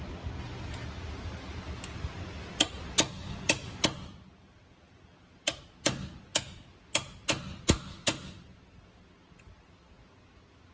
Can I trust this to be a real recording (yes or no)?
yes